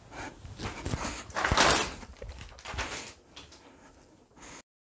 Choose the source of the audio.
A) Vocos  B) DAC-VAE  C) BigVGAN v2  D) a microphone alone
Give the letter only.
D